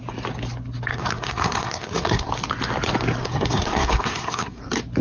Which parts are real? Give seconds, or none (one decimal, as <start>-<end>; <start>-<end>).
0.0-0.9; 2.3-3.2; 4.6-5.0